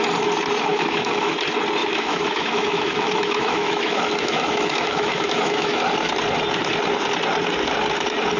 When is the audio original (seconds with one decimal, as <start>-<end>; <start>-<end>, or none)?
0.0-0.7; 1.3-1.8; 5.8-8.4